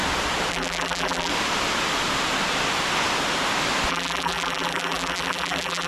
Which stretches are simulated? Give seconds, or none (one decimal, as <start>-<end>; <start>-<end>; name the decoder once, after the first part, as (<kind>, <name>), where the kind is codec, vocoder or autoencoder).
0.5-1.3 (vocoder, BigVGAN v2); 3.9-5.9